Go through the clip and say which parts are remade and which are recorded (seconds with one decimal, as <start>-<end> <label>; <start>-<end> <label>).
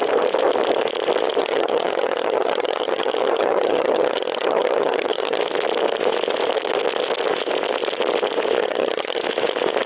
0.0-1.4 recorded; 1.4-5.4 remade; 5.4-8.6 recorded; 8.6-9.2 remade; 9.2-9.9 recorded